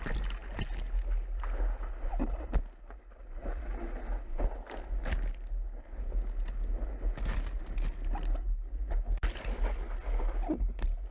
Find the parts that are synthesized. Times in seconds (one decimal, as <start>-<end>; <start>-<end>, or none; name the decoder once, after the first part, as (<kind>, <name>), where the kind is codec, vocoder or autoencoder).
none